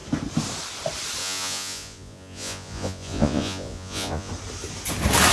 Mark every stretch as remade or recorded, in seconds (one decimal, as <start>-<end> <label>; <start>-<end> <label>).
0.0-1.2 recorded; 1.2-4.3 remade; 4.3-5.3 recorded